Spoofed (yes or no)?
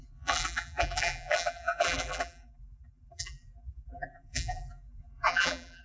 yes